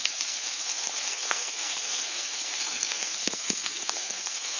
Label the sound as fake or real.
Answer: fake